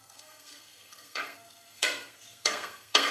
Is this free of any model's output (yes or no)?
no